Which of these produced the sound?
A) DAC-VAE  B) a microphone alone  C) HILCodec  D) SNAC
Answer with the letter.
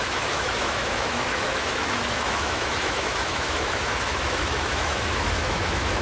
A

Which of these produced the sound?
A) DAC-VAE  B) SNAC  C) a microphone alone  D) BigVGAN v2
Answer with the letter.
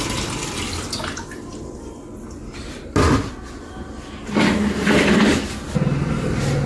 C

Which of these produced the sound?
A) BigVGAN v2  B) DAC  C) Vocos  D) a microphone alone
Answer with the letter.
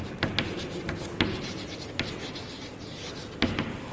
D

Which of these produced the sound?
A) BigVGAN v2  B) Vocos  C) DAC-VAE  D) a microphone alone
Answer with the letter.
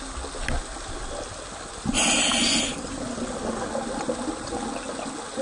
D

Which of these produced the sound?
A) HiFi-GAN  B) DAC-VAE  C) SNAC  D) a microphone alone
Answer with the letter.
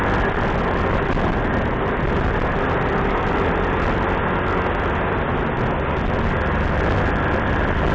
D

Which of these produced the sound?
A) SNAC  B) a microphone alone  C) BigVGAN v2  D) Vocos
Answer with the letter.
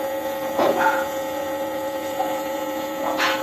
D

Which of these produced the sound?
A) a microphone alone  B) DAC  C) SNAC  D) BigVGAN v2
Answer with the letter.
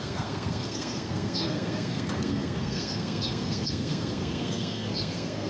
C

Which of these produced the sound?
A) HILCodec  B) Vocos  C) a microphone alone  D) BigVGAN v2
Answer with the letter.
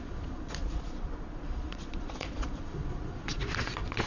B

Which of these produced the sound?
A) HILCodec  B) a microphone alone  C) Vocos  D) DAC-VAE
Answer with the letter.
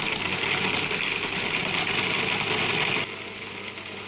B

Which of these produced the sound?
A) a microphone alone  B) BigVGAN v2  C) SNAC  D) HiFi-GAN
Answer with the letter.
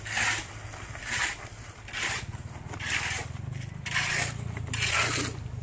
A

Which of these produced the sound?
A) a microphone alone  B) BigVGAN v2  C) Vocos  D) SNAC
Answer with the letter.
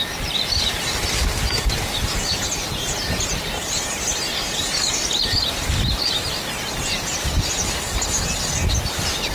A